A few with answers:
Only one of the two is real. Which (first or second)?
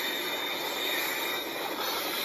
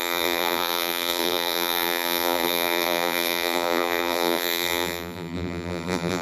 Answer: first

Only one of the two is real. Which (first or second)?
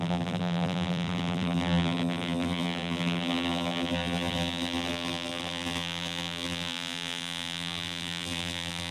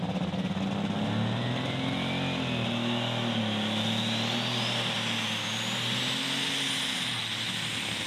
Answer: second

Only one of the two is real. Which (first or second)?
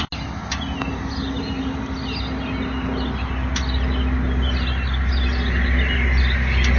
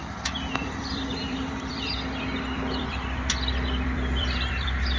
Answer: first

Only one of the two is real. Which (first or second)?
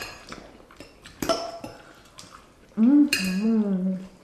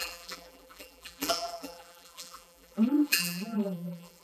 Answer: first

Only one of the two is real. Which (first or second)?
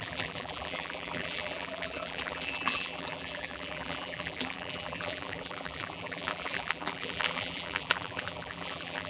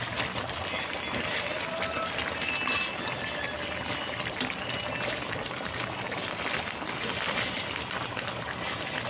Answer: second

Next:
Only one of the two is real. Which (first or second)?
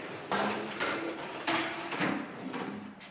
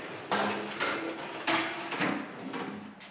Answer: second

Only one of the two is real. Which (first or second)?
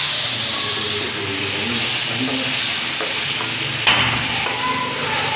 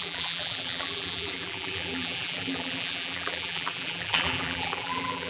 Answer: first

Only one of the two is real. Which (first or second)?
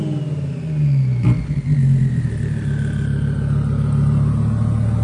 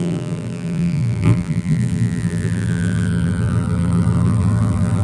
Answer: first